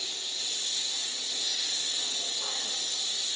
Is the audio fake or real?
real